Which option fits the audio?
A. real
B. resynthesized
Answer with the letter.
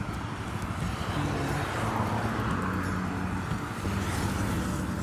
A